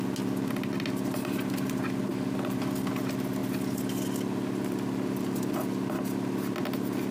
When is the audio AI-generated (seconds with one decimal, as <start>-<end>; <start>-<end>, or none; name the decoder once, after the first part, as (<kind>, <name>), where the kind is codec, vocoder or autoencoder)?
none